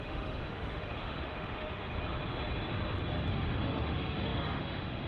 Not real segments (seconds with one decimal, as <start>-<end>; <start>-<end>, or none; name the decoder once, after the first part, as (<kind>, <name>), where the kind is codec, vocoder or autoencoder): 0.0-1.9 (autoencoder, DAC-VAE); 3.3-5.1